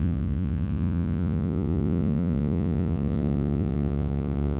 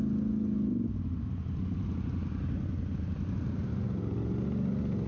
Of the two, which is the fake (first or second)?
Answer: first